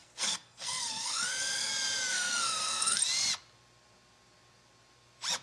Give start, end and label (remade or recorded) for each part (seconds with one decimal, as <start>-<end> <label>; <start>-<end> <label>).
0.0-1.7 remade; 1.7-2.1 recorded; 2.1-3.0 remade; 3.0-5.4 recorded